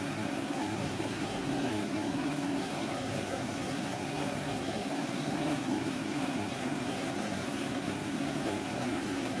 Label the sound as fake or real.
fake